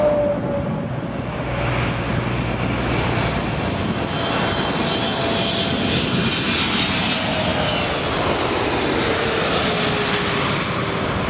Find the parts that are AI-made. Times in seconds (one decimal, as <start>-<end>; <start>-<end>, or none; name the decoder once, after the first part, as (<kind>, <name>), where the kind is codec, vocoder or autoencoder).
none